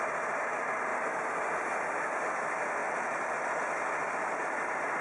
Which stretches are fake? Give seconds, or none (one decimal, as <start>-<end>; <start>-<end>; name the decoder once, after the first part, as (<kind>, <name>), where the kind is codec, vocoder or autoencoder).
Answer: 0.9-1.5 (vocoder, BigVGAN v2); 2.8-3.4